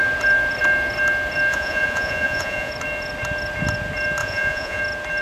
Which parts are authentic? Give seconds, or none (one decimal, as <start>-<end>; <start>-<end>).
0.0-1.5; 2.7-4.2; 4.8-5.2